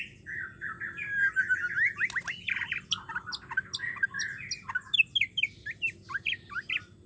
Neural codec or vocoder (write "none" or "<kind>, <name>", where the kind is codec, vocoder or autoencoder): none